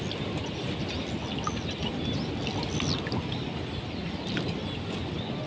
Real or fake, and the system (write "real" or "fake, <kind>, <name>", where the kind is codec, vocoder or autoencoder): real